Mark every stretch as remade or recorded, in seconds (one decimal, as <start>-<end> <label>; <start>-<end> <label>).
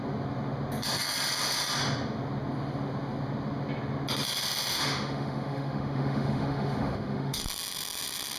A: 0.0-4.7 recorded; 4.7-7.4 remade; 7.4-8.4 recorded